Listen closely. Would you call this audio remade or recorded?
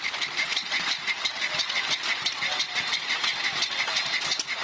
recorded